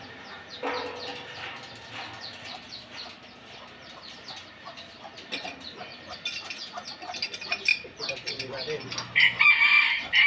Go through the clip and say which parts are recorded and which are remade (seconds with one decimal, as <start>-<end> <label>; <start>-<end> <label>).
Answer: 0.0-10.3 recorded